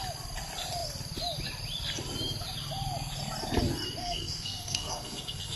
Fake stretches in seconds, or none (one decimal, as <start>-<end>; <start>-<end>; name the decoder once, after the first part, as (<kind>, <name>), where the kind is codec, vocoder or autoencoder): 4.0-5.6 (codec, SNAC)